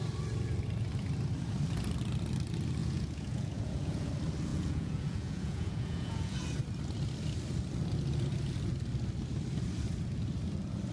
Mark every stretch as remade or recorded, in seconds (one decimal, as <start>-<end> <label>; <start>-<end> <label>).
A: 0.0-2.8 recorded; 2.8-4.1 remade; 4.1-4.5 recorded; 4.5-6.4 remade; 6.4-10.9 recorded